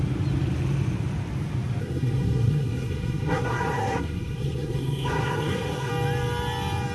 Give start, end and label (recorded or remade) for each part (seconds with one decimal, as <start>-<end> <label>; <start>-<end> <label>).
0.0-1.8 recorded; 1.8-5.9 remade; 5.9-6.9 recorded